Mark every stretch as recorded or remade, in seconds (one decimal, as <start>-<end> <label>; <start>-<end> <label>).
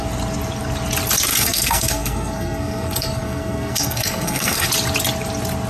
0.0-1.3 recorded; 1.3-4.7 remade; 4.7-5.7 recorded